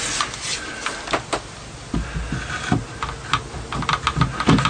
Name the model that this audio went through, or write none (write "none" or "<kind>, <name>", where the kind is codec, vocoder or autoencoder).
none